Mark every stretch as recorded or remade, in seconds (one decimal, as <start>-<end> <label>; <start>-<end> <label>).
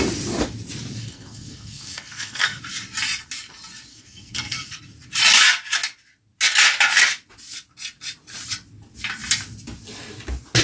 0.0-1.0 recorded; 1.0-2.6 remade; 2.6-3.9 recorded; 3.9-4.8 remade; 4.8-10.6 recorded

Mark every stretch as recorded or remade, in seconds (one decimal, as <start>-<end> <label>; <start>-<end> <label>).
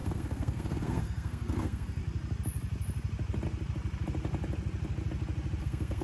0.0-2.0 remade; 2.0-5.6 recorded; 5.6-6.0 remade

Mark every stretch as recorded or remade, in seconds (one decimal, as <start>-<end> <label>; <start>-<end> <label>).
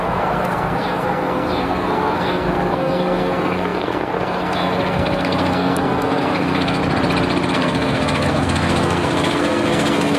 0.0-6.8 remade; 6.8-7.5 recorded; 7.5-10.2 remade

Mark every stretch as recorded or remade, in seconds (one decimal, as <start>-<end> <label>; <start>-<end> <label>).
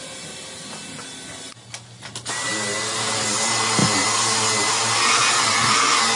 0.0-6.2 recorded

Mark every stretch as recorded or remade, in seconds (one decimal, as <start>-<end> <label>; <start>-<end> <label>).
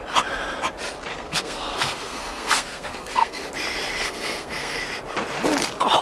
0.0-1.1 recorded; 1.1-3.4 remade; 3.4-4.0 recorded; 4.0-4.8 remade; 4.8-6.0 recorded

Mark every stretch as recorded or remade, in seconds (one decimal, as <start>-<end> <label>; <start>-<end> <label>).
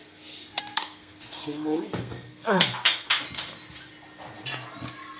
0.0-3.1 remade; 3.1-5.2 recorded